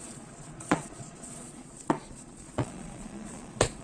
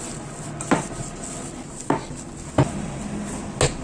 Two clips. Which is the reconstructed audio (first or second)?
first